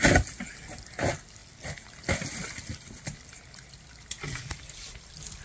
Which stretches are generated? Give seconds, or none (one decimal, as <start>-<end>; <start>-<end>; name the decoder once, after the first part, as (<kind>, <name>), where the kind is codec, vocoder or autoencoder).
none